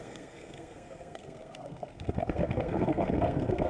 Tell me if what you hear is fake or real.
fake